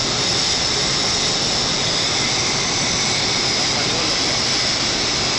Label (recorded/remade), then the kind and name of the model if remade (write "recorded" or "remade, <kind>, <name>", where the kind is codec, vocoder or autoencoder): remade, vocoder, BigVGAN v2